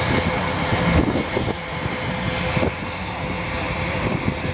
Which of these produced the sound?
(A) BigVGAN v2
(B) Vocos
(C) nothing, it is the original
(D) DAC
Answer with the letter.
C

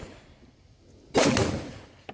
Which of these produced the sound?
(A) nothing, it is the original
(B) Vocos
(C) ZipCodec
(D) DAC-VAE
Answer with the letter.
A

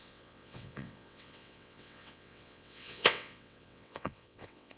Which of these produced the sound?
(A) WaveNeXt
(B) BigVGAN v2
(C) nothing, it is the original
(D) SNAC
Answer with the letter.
A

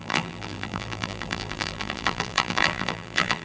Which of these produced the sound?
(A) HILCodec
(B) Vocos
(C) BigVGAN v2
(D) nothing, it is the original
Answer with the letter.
C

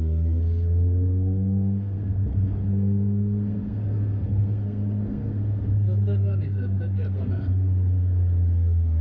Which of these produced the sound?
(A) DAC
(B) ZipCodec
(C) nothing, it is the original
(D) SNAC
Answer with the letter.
D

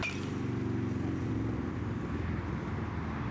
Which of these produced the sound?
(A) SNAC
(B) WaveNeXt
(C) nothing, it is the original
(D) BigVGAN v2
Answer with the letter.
C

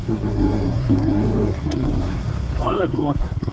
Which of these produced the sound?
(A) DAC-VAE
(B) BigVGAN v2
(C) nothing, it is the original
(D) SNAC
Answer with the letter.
D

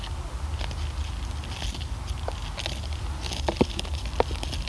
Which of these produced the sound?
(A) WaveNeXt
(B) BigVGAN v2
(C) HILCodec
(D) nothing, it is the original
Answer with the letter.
D